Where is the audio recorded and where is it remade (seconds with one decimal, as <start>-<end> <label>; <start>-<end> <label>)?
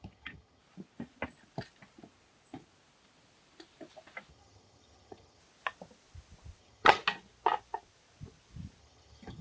0.0-0.6 remade; 0.6-4.3 recorded; 4.3-5.4 remade; 5.4-6.6 recorded; 6.6-7.0 remade; 7.0-8.8 recorded; 8.8-9.4 remade